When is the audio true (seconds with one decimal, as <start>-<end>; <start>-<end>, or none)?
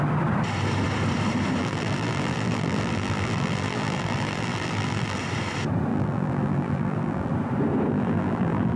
0.0-1.6; 5.2-5.9; 7.3-7.9